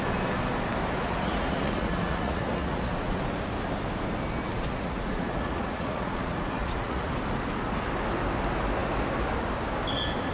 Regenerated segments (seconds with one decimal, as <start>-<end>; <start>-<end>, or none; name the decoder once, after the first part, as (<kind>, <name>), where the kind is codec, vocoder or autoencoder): 1.0-3.2 (vocoder, Vocos); 4.4-7.1